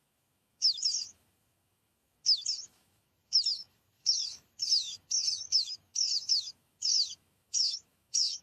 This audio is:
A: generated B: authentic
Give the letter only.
A